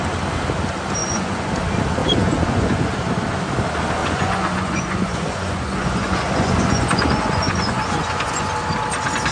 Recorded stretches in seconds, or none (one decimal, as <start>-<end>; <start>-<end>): 0.0-1.0; 1.5-2.0; 2.9-4.0; 8.5-9.3